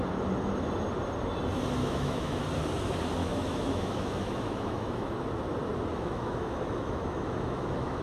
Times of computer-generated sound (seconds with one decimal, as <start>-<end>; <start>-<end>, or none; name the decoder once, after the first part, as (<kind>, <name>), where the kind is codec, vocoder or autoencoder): 1.8-2.4 (autoencoder, DAC-VAE); 3.2-5.1; 5.9-8.0